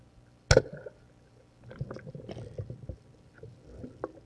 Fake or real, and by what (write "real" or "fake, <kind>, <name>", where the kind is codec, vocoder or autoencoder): real